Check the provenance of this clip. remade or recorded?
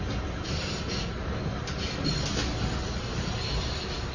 recorded